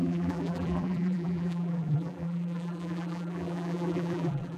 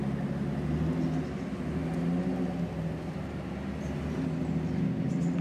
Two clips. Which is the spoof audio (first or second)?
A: first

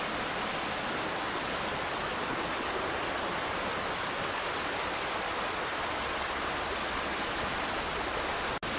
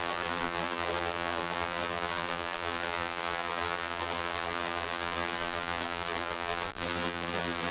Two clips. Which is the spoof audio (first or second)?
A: second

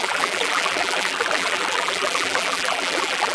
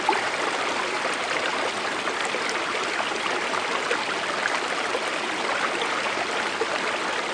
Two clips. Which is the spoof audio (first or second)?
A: first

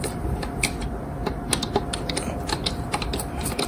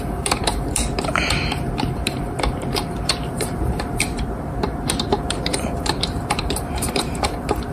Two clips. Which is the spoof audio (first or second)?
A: second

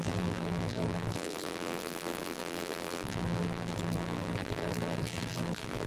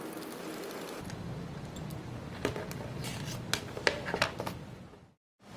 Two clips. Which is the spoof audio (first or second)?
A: first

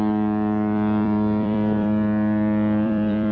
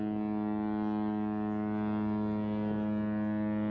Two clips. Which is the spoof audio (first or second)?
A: first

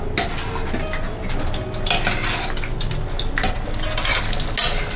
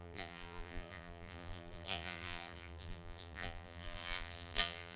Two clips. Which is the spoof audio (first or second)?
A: second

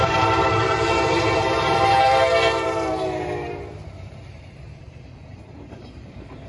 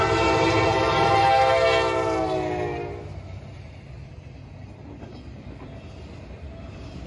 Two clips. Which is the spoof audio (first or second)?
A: first